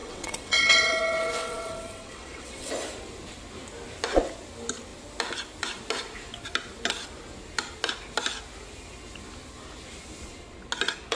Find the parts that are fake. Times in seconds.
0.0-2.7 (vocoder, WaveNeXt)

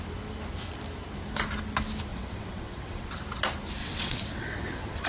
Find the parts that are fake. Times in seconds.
2.1-3.1 (vocoder, WaveNeXt); 3.8-5.1

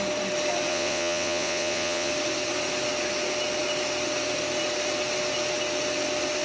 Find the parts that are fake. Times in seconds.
0.7-2.1 (vocoder, WaveNeXt)

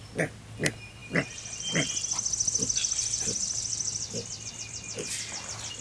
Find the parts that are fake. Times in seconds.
none

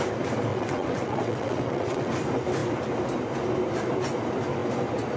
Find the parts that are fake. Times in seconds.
0.5-2.1 (vocoder, WaveNeXt)

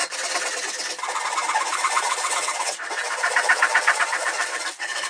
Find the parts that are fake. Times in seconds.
1.7-5.1 (vocoder, WaveNeXt)

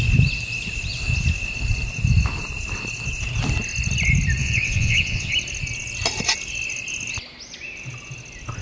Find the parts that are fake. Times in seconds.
4.4-5.3 (vocoder, WaveNeXt)